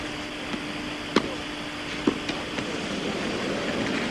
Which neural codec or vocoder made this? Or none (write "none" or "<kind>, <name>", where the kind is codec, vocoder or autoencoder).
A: none